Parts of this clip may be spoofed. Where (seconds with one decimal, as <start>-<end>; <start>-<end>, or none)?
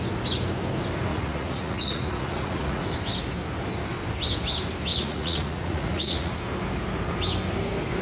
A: 1.1-2.8; 4.9-6.3